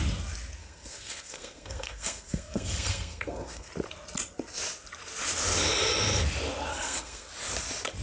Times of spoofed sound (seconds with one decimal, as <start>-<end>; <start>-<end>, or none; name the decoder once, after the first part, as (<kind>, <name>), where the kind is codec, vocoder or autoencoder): 0.6-3.7 (codec, SNAC); 6.7-7.3